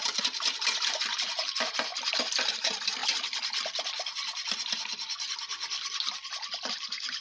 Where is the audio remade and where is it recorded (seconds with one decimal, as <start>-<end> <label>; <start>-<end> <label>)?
0.0-1.9 remade; 1.9-2.5 recorded; 2.5-3.0 remade; 3.0-6.7 recorded; 6.7-7.2 remade